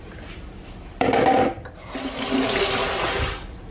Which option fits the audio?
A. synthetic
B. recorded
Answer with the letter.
B